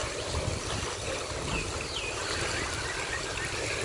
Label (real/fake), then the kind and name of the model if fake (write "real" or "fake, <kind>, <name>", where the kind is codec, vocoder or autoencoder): real